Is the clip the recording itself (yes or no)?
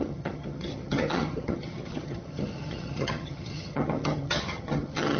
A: no